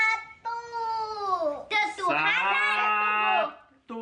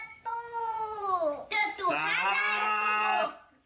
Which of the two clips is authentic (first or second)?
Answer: first